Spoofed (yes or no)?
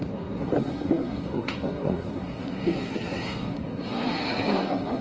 yes